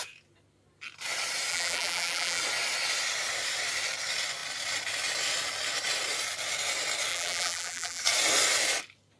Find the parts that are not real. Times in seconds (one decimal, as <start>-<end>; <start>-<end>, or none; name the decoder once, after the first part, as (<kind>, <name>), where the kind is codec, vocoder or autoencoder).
1.5-2.4 (vocoder, BigVGAN v2); 7.1-8.0